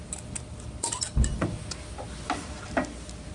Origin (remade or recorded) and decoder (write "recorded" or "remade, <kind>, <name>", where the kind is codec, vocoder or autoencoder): recorded